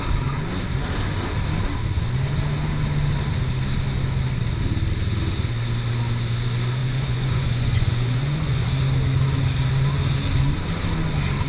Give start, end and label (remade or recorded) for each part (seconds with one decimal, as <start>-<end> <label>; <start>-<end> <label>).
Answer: 0.0-6.8 recorded; 6.8-8.7 remade; 8.7-11.5 recorded